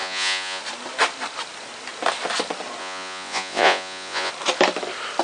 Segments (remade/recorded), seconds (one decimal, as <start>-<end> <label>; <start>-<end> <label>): 0.0-0.6 remade; 0.6-2.8 recorded; 2.8-4.3 remade; 4.3-5.2 recorded